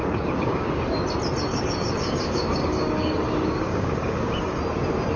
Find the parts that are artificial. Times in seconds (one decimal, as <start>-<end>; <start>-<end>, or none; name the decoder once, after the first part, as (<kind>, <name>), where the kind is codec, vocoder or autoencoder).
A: 0.0-0.7 (codec, DAC); 1.5-4.6